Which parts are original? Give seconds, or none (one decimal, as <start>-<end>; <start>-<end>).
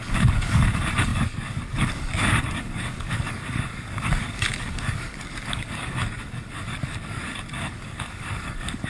none